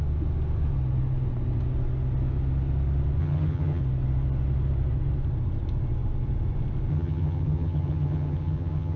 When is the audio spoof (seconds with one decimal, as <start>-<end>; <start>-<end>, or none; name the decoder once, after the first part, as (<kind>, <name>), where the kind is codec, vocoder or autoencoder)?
3.2-3.8 (vocoder, HiFi-GAN); 6.9-9.0